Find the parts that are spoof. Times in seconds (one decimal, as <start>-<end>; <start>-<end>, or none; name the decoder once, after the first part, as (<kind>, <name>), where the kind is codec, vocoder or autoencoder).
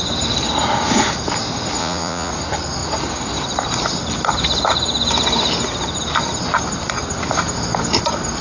1.8-2.3 (vocoder, Vocos)